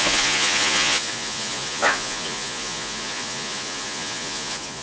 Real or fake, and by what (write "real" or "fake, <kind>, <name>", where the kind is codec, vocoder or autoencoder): fake, vocoder, Vocos